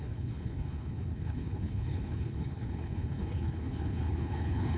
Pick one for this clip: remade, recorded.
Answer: remade